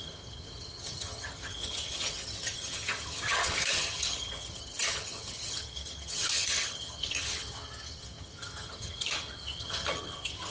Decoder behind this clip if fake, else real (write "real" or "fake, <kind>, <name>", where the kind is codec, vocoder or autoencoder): fake, vocoder, HiFi-GAN